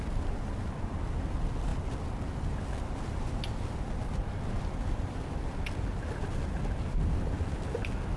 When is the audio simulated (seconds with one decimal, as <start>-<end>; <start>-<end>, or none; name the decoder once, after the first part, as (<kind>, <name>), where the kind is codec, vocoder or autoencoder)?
none

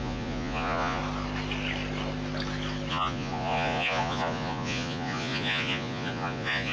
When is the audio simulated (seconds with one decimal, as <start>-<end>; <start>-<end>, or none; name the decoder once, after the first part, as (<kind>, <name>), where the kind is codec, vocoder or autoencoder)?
0.0-1.0 (vocoder, Vocos); 2.9-6.7

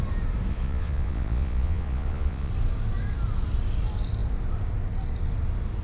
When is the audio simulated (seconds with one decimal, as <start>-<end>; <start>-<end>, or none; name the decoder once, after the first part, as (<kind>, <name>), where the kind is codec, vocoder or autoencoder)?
0.5-2.5 (vocoder, Vocos)